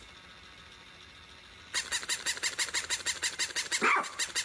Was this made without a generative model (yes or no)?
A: yes